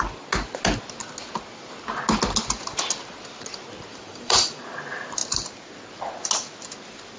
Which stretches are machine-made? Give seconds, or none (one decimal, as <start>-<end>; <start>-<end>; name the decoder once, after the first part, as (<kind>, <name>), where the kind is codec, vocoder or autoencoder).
3.9-4.6 (vocoder, BigVGAN v2)